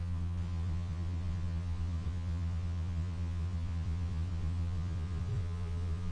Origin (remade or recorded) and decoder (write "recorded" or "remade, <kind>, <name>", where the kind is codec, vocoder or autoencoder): remade, vocoder, Vocos